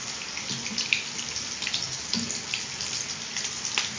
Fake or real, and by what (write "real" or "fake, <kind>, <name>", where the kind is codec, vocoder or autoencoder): fake, vocoder, BigVGAN v2